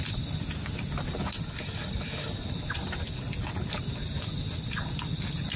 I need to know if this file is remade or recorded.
recorded